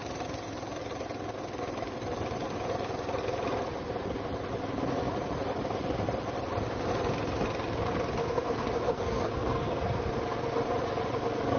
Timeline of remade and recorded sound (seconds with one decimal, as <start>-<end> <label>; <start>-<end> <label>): 0.0-8.2 recorded; 8.2-10.1 remade; 10.1-11.6 recorded